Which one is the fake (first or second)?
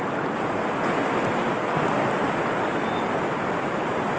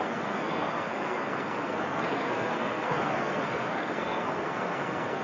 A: second